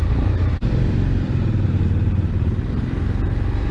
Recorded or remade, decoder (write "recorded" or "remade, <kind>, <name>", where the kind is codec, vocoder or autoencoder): recorded